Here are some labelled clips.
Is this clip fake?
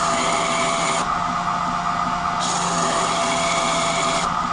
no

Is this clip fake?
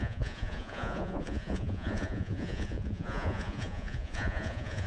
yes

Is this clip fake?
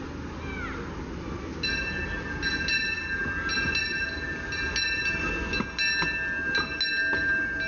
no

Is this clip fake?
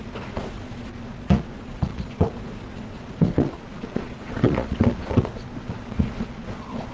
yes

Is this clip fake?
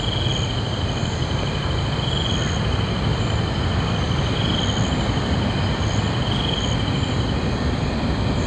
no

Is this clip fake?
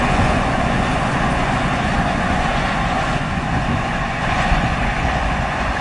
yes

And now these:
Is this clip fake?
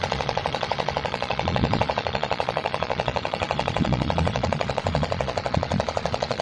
yes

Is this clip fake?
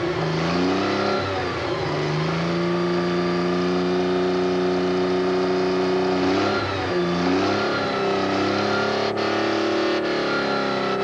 no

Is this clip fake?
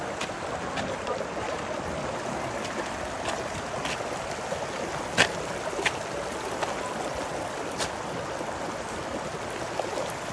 no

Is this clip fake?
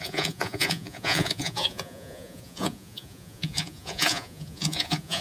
yes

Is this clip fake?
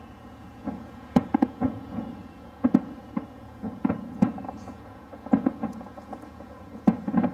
yes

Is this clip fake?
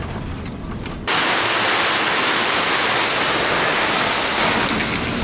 no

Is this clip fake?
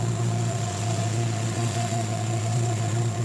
yes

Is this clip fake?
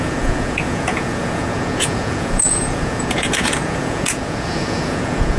yes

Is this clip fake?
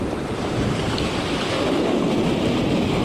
no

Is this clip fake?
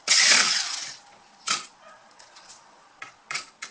yes